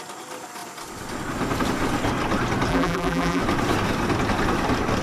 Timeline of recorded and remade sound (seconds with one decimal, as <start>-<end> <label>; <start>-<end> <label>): 0.0-2.7 recorded; 2.7-3.4 remade; 3.4-5.0 recorded